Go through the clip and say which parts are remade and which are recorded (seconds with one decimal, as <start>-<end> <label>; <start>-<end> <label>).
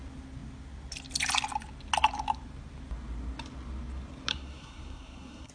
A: 0.0-4.3 recorded; 4.3-5.5 remade